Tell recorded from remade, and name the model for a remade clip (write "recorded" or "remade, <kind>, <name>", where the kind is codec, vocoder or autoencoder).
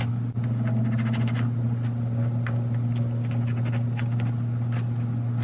recorded